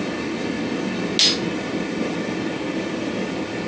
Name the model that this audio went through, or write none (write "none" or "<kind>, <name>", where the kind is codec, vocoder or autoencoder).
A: none